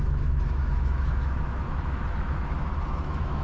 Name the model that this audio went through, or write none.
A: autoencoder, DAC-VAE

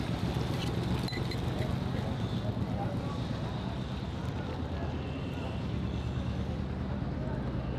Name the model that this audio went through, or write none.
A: none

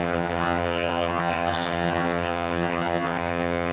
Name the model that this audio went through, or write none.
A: vocoder, HiFi-GAN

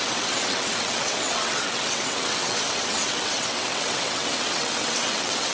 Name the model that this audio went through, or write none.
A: vocoder, WaveNeXt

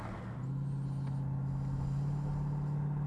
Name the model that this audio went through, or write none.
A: none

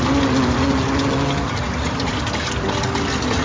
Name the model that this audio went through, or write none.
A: none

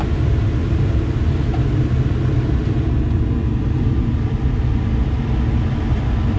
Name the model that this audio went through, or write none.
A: none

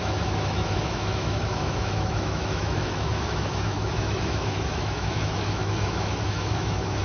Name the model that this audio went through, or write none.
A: autoencoder, DAC-VAE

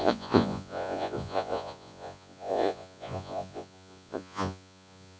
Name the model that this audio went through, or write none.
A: vocoder, Vocos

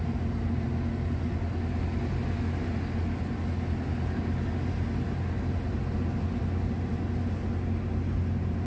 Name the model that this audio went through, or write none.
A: none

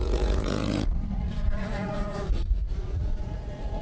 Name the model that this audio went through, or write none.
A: vocoder, Vocos